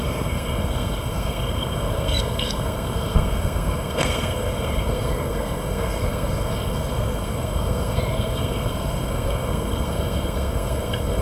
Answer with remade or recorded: remade